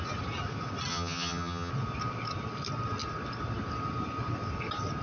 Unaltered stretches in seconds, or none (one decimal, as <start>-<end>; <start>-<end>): 0.0-0.9; 1.7-5.0